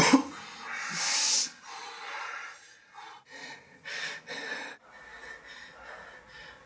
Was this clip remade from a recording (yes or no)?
no